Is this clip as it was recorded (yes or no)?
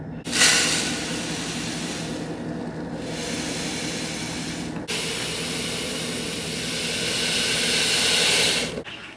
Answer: yes